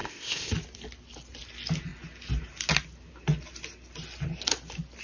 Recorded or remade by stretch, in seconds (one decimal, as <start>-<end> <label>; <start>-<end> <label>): 0.0-0.5 remade; 0.5-5.0 recorded